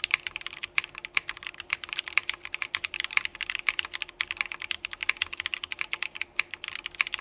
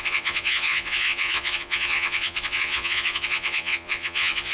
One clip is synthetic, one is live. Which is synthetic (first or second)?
second